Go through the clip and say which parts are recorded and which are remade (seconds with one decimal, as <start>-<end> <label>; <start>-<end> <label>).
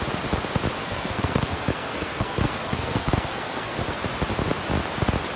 0.0-0.8 recorded; 0.8-4.0 remade; 4.0-5.4 recorded